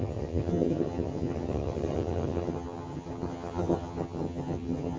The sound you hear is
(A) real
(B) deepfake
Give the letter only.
B